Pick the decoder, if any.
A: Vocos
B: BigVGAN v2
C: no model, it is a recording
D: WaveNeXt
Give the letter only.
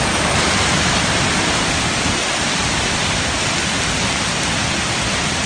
C